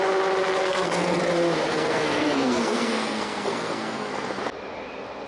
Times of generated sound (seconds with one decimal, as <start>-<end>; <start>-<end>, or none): 0.6-1.2; 1.7-4.1